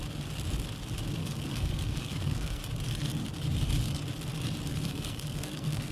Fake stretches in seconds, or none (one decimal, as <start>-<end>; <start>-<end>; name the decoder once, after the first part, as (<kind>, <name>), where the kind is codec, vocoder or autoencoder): 1.2-2.6 (codec, SNAC); 4.7-5.9